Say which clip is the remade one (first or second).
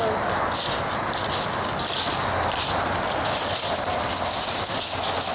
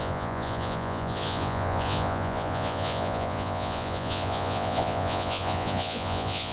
second